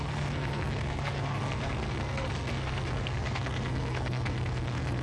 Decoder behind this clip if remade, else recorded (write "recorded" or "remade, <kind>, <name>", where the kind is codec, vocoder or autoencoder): remade, codec, SNAC